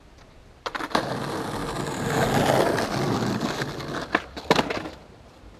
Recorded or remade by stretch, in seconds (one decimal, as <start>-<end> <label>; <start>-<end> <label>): 0.0-1.6 remade; 1.6-5.0 recorded; 5.0-5.6 remade